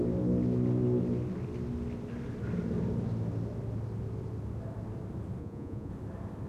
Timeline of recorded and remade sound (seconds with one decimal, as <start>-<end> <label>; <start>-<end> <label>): 0.0-5.4 recorded; 5.4-5.9 remade; 5.9-6.5 recorded